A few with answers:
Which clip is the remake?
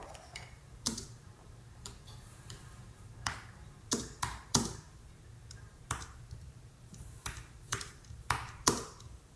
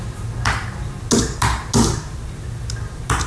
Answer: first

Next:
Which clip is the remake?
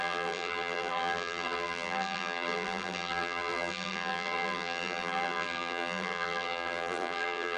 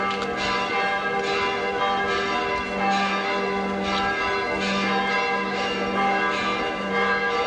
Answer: first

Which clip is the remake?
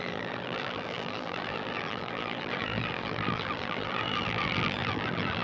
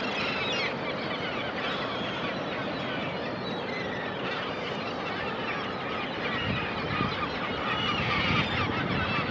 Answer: first